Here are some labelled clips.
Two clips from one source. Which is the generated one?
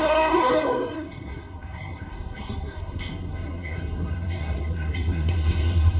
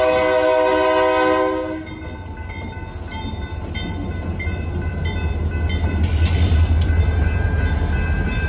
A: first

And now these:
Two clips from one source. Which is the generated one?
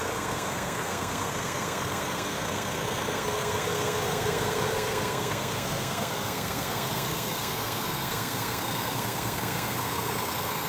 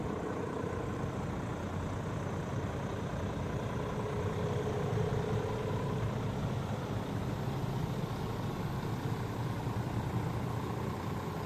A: first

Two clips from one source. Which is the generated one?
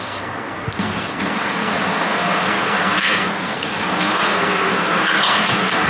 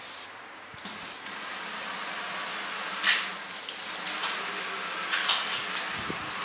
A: first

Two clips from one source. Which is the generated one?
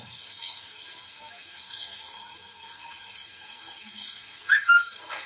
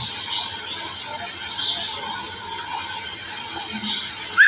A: first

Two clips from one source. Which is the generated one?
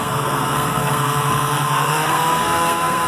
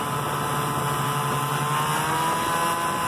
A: first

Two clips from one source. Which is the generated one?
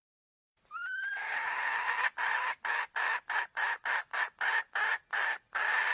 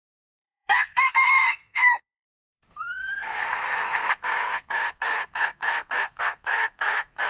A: second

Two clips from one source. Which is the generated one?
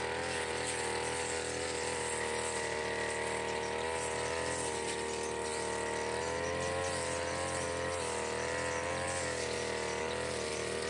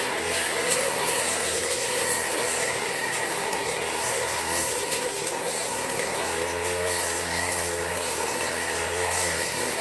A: second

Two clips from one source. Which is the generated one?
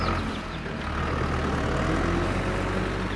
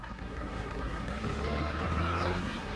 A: second